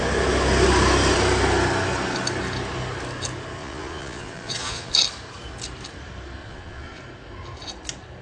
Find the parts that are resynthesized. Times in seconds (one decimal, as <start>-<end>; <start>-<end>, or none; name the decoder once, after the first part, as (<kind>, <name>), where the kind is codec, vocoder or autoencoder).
3.6-4.9 (vocoder, Vocos); 6.4-7.0